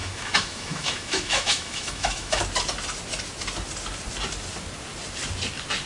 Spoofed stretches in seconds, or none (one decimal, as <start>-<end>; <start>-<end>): 0.0-2.4